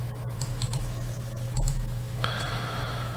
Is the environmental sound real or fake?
fake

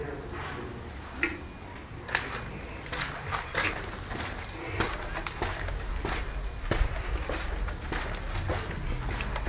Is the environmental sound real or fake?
real